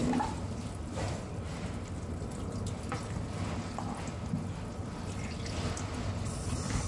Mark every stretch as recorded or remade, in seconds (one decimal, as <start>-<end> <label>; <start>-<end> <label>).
0.0-2.5 remade; 2.5-6.9 recorded